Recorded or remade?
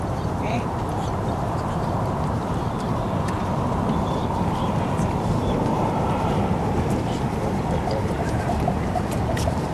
remade